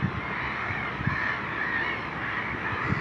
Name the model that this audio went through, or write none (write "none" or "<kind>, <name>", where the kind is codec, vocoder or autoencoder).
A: none